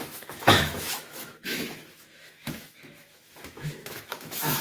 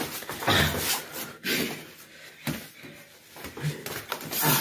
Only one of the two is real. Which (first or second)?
second